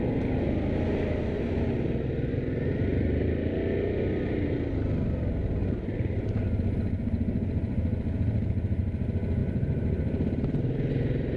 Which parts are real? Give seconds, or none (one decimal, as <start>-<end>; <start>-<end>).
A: 0.0-5.6; 6.4-9.4; 10.9-11.4